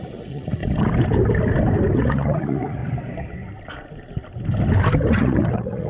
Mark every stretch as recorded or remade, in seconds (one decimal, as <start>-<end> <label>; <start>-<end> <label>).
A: 0.0-0.6 remade; 0.6-2.0 recorded; 2.0-2.8 remade; 2.8-5.1 recorded; 5.1-5.9 remade